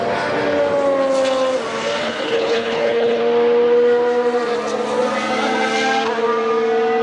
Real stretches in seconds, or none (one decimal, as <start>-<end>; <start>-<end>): 0.0-2.0; 3.2-7.0